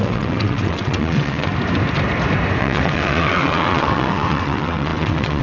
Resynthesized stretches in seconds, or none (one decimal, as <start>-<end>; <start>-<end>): 0.0-1.5; 2.6-5.4